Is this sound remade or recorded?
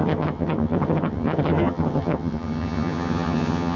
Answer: remade